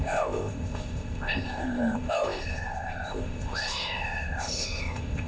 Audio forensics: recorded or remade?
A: remade